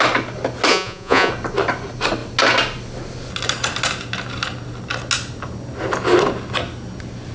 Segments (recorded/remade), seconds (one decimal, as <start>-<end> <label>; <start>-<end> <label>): 0.0-0.7 recorded; 0.7-1.3 remade; 1.3-7.3 recorded